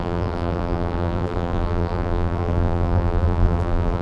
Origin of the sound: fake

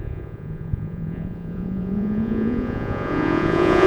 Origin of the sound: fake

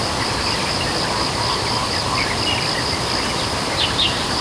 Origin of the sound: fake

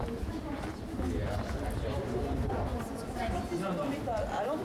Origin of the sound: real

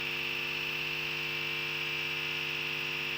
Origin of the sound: fake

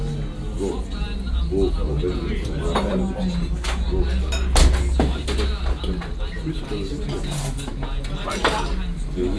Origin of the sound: real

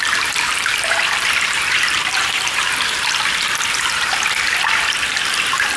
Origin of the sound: fake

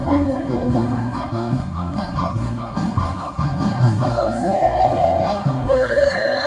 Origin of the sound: fake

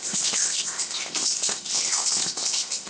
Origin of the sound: fake